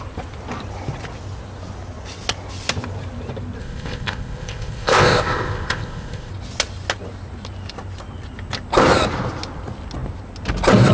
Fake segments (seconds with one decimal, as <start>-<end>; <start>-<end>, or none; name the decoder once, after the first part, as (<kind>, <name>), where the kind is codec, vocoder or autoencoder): 3.6-6.3 (codec, ZipCodec)